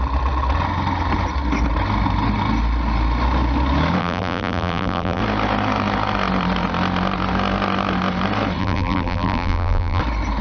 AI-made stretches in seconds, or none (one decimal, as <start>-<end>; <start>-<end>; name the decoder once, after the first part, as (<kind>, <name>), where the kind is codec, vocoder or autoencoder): 4.0-5.2 (vocoder, BigVGAN v2); 8.6-10.0